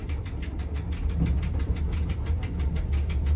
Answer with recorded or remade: recorded